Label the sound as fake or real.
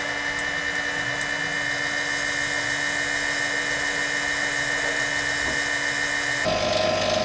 real